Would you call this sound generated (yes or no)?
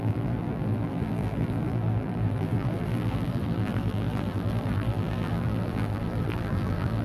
yes